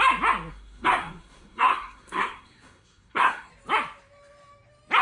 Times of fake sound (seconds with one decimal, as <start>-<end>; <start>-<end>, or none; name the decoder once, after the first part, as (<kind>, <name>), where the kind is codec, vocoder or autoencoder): 0.5-3.5 (codec, SNAC)